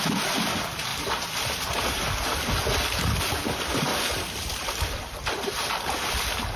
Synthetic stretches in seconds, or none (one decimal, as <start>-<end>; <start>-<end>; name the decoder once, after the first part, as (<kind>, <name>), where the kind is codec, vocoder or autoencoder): 3.9-5.7 (vocoder, BigVGAN v2)

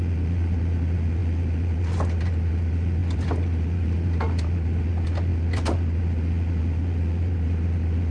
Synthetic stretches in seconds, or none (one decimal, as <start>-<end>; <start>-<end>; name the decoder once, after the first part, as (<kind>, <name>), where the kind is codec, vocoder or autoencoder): 3.0-4.4 (vocoder, BigVGAN v2)